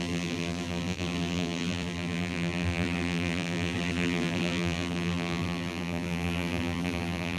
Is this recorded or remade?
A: remade